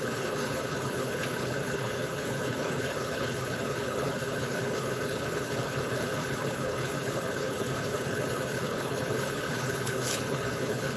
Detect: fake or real fake